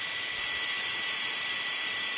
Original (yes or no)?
yes